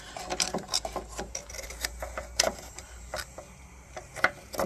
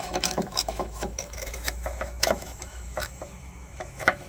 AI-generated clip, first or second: second